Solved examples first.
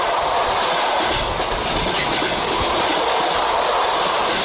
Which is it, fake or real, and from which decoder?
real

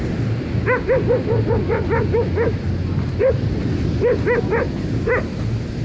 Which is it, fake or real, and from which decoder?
real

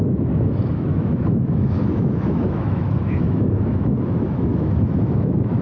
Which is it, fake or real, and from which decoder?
fake, autoencoder, DAC-VAE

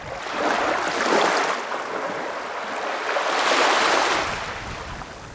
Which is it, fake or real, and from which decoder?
real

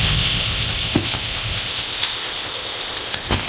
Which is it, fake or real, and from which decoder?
fake, codec, ZipCodec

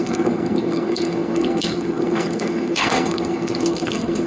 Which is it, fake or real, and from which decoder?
fake, codec, SNAC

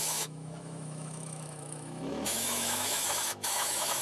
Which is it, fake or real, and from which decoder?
fake, autoencoder, DAC-VAE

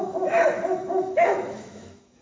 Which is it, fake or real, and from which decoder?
fake, autoencoder, DAC-VAE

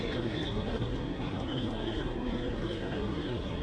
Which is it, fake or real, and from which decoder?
fake, codec, SNAC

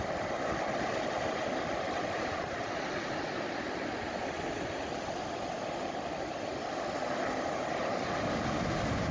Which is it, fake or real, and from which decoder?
real